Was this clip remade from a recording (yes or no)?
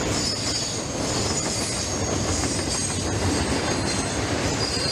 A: no